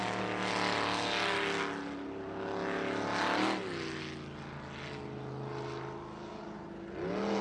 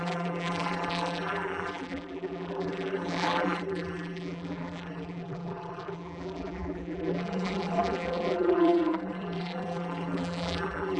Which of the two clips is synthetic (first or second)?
second